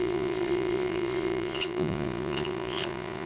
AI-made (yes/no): yes